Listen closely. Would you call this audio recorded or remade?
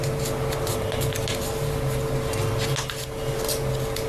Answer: recorded